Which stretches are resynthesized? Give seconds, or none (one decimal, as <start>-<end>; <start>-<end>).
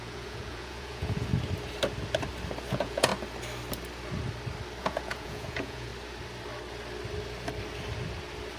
0.0-1.3; 2.7-3.1; 4.8-5.9